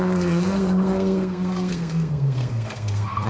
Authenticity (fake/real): fake